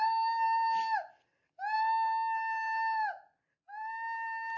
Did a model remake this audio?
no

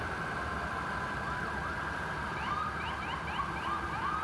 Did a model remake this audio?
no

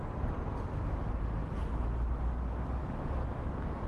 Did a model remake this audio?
no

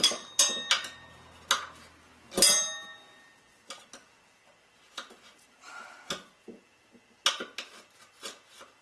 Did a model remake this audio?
no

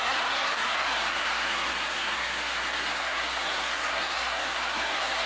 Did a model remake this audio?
yes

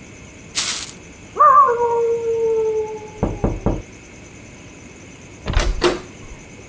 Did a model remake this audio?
no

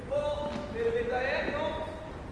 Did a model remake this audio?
no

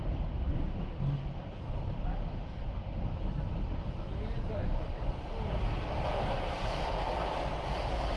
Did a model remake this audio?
no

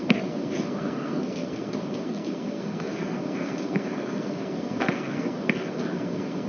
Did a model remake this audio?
yes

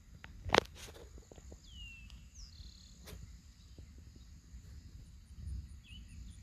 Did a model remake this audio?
no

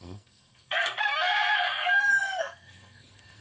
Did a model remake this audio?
yes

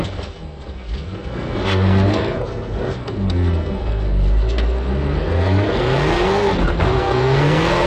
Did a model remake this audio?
yes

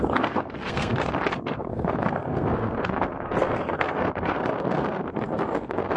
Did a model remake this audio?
yes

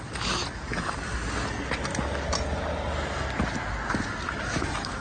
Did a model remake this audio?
no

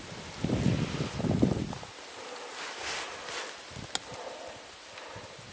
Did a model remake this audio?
no